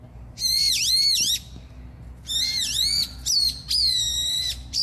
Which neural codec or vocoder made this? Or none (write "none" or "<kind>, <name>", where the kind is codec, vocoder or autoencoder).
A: none